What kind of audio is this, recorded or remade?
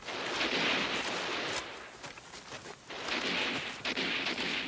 recorded